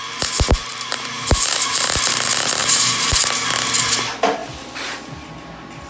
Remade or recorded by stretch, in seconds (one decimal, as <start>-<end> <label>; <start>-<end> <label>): 0.0-0.7 recorded; 0.7-1.7 remade; 1.7-2.6 recorded; 2.6-3.2 remade; 3.2-5.9 recorded